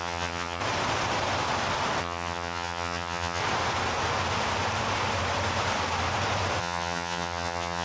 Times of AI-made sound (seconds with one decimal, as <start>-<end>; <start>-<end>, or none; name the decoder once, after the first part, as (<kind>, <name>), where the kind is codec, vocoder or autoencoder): 0.0-0.6 (vocoder, HiFi-GAN); 2.0-3.4; 6.6-7.8